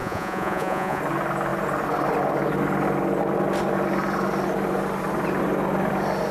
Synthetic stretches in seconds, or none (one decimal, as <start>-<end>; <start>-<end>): 0.0-1.0